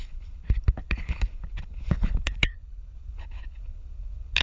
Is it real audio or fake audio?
fake